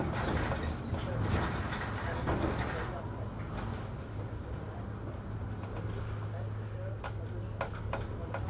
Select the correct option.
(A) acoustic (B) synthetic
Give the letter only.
A